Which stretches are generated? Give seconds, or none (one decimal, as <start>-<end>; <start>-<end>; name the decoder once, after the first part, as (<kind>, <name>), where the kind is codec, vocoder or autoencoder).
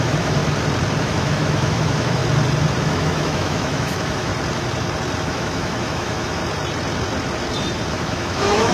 0.0-0.4 (autoencoder, DAC-VAE); 1.0-2.2; 2.8-4.3; 5.2-6.4; 7.9-8.7